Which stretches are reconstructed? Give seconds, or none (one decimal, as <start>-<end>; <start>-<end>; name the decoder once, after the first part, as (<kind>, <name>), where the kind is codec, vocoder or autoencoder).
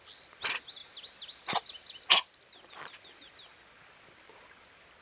none